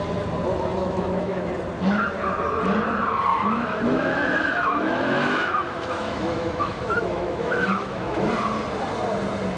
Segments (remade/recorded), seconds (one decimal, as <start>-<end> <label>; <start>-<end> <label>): 0.0-0.8 recorded; 0.8-1.5 remade; 1.5-3.3 recorded; 3.3-8.3 remade; 8.3-9.6 recorded